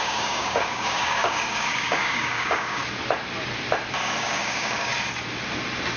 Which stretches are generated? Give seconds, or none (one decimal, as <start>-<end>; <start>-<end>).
0.0-2.8; 4.2-4.9